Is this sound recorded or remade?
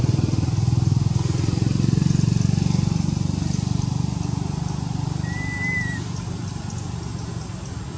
recorded